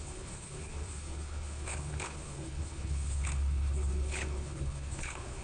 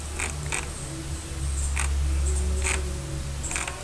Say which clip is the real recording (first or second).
second